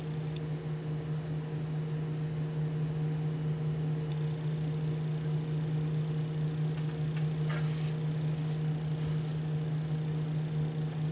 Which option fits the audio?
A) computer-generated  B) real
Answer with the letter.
B